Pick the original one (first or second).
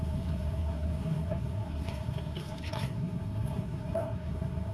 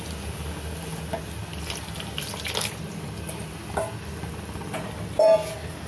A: second